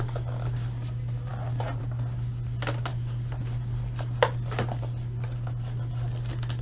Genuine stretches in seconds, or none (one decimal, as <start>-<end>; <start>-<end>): 0.0-6.6